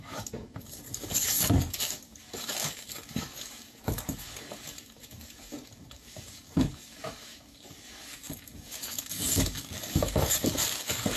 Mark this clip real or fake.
fake